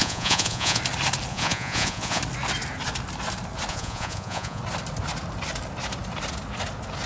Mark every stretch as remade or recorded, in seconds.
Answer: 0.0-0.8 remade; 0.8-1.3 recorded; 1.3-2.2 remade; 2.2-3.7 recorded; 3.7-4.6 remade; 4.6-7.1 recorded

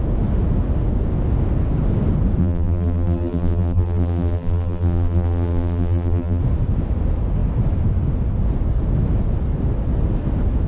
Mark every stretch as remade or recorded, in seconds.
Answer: 0.0-2.4 recorded; 2.4-6.4 remade; 6.4-10.7 recorded

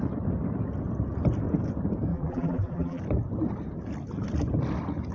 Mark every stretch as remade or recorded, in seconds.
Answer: 0.0-2.1 recorded; 2.1-3.0 remade; 3.0-5.1 recorded

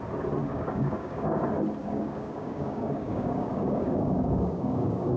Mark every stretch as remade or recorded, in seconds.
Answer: 0.0-0.4 recorded; 0.4-1.4 remade; 1.4-1.8 recorded; 1.8-5.2 remade

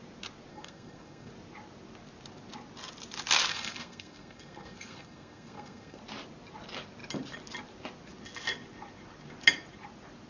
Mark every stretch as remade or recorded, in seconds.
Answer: 0.0-0.5 recorded; 0.5-1.3 remade; 1.3-3.5 recorded; 3.5-6.0 remade; 6.0-10.3 recorded

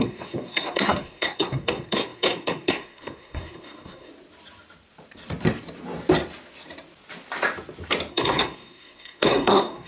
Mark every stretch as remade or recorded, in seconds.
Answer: 0.0-4.1 remade; 4.1-8.1 recorded; 8.1-9.9 remade